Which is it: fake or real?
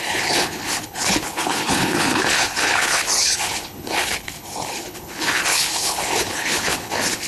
fake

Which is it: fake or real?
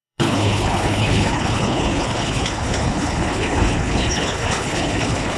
fake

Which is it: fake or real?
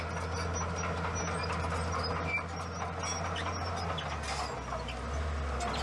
real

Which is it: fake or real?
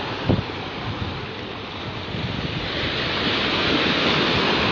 real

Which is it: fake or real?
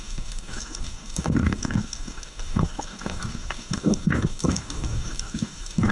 fake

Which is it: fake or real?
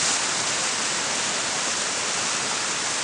real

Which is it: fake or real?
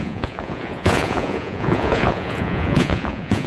fake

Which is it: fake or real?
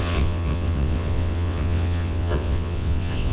fake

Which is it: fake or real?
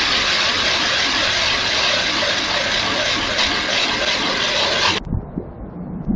real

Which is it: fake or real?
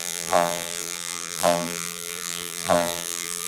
fake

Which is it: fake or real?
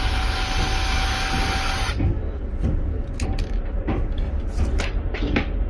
real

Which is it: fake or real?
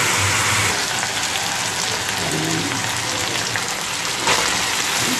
real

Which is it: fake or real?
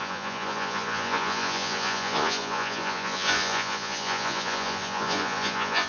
fake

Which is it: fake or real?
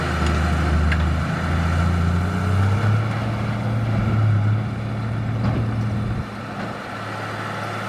real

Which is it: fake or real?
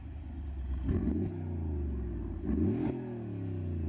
real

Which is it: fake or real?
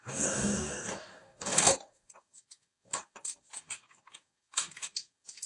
fake